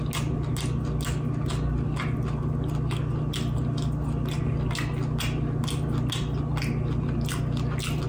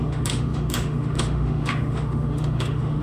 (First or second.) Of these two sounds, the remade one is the second